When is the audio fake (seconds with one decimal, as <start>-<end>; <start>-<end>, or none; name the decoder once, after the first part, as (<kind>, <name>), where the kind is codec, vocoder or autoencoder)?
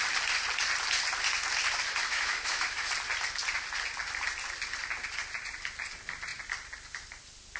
2.0-2.9 (autoencoder, DAC-VAE)